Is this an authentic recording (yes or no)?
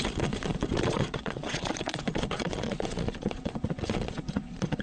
no